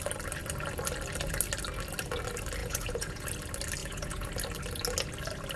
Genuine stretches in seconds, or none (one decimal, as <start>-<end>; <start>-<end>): 0.0-2.6; 3.3-3.8; 4.3-5.6